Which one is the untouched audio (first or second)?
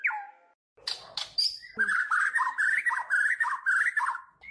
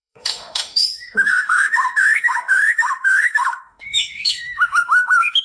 first